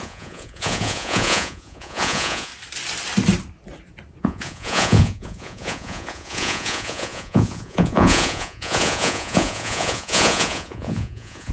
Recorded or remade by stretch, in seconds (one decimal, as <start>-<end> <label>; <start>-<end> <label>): 0.0-2.5 remade; 2.5-4.2 recorded; 4.2-11.5 remade